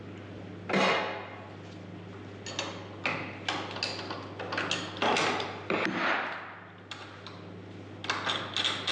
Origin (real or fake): real